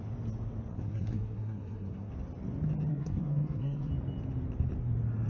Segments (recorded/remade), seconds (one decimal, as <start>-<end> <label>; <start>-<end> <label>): 0.0-0.7 recorded; 0.7-2.1 remade; 2.1-2.9 recorded; 2.9-3.9 remade; 3.9-5.3 recorded